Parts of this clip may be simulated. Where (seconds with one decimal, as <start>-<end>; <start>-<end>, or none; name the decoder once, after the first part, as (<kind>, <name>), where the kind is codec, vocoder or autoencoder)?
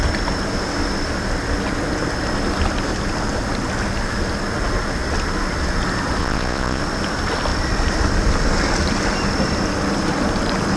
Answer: 6.2-6.8 (vocoder, Vocos)